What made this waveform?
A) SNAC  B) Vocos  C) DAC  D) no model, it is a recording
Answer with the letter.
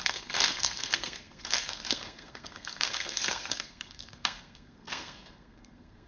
A